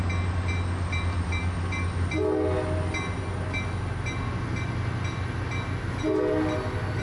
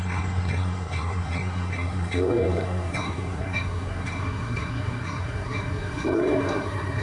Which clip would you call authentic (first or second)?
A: first